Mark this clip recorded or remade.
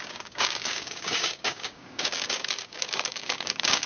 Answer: remade